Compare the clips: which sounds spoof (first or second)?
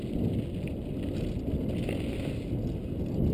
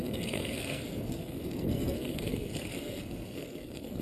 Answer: second